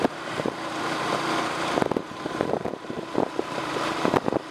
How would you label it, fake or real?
fake